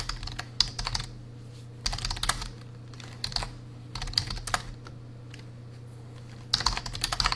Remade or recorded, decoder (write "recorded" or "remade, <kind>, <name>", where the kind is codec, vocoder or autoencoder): recorded